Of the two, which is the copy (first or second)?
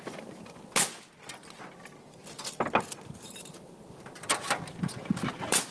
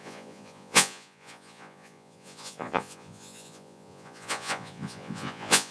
second